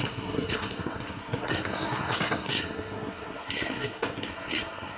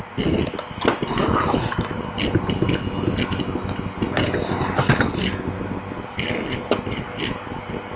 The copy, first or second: first